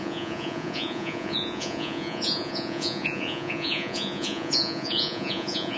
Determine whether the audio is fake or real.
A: fake